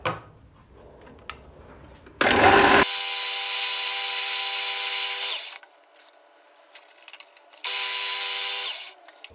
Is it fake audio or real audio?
real